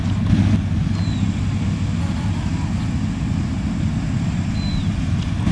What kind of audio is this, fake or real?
real